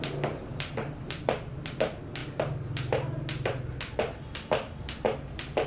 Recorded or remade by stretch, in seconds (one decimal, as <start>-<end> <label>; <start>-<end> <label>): 0.0-0.5 recorded; 0.5-1.2 remade; 1.2-5.7 recorded